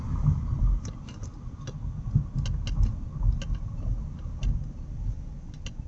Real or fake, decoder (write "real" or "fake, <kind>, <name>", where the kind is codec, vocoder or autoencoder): real